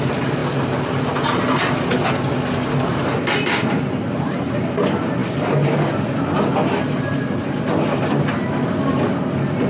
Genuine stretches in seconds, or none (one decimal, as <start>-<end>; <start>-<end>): 0.0-9.7